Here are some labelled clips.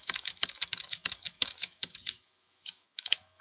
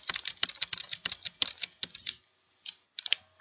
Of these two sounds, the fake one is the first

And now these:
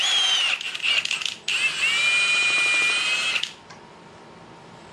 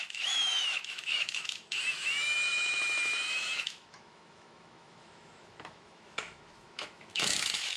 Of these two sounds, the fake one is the second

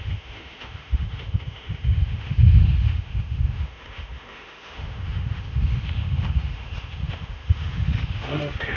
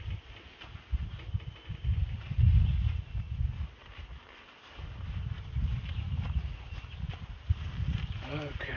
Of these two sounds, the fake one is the first